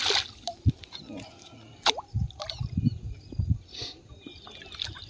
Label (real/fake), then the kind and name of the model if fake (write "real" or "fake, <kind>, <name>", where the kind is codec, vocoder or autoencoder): real